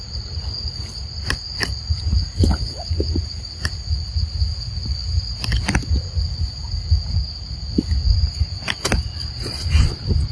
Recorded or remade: recorded